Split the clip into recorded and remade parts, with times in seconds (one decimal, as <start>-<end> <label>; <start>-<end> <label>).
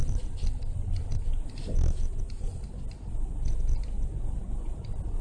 0.0-5.2 recorded